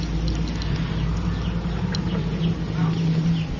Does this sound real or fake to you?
real